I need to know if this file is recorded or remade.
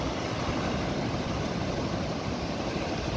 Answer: recorded